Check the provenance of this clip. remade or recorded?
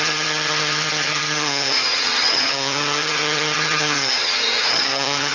remade